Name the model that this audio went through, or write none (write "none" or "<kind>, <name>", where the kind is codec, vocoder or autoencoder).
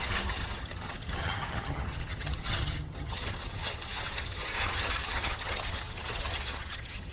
vocoder, HiFi-GAN